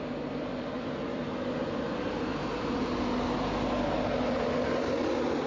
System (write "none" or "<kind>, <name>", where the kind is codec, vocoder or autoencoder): none